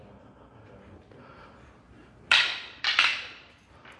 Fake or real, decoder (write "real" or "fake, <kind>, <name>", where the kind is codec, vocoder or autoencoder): real